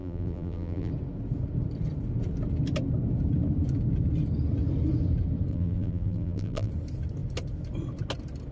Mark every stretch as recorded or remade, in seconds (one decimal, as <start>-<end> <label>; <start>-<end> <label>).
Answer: 0.0-0.9 remade; 0.9-5.5 recorded; 5.5-6.7 remade; 6.7-8.5 recorded